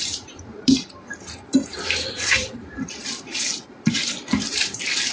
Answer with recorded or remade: remade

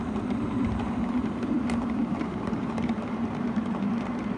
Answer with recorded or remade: remade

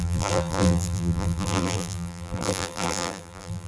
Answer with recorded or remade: remade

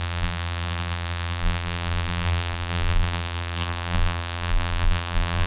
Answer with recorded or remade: remade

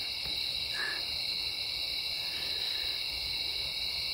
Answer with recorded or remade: remade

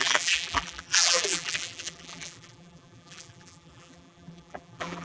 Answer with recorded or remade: remade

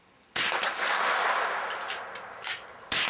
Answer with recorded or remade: recorded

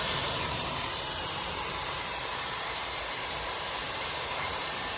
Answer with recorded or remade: remade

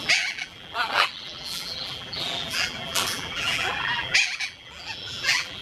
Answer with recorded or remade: remade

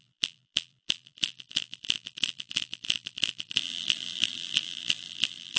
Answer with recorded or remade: remade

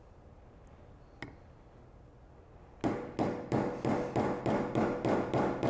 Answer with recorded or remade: recorded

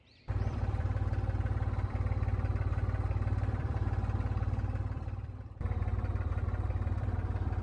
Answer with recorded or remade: remade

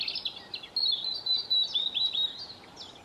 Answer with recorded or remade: recorded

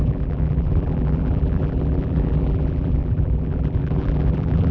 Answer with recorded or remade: remade